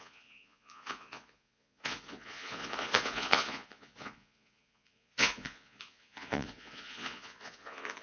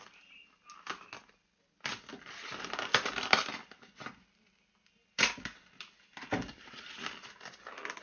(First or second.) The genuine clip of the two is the second